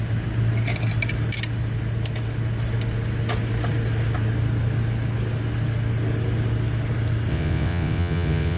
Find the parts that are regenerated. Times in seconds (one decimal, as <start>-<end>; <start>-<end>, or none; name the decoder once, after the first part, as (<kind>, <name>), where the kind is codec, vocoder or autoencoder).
7.3-8.6 (vocoder, WaveNeXt)